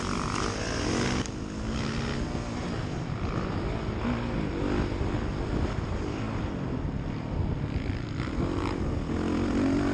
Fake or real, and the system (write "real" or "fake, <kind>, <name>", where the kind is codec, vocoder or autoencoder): real